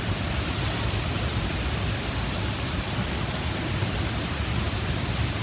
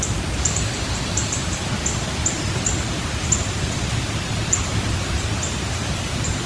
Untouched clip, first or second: first